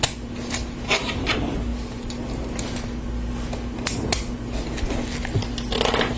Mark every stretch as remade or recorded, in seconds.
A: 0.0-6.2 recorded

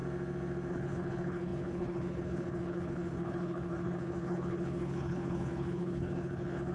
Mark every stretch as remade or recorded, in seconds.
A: 0.0-0.7 recorded; 0.7-6.7 remade

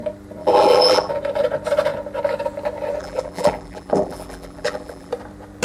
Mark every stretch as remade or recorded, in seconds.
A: 0.0-0.4 recorded; 0.4-1.1 remade; 1.1-3.0 recorded; 3.0-5.1 remade; 5.1-5.6 recorded

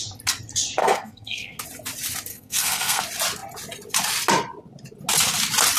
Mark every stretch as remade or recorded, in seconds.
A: 0.0-0.8 recorded; 0.8-1.6 remade; 1.6-2.3 recorded; 2.3-3.0 remade; 3.0-5.8 recorded

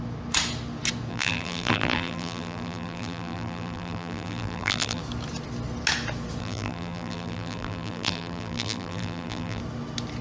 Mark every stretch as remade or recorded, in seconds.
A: 0.0-1.1 recorded; 1.1-5.0 remade; 5.0-6.4 recorded; 6.4-9.6 remade; 9.6-10.2 recorded

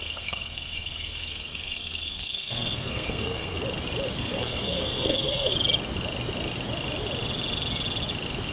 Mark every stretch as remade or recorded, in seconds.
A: 0.0-3.6 remade; 3.6-4.2 recorded; 4.2-5.5 remade; 5.5-8.5 recorded

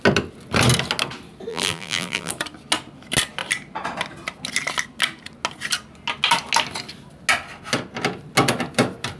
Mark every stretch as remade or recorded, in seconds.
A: 0.0-1.5 recorded; 1.5-2.3 remade; 2.3-9.2 recorded